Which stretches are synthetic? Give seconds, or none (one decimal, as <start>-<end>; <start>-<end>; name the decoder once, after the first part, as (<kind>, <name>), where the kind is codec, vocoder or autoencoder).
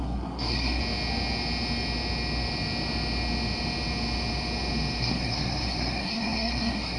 0.0-0.8 (codec, SNAC); 5.0-7.0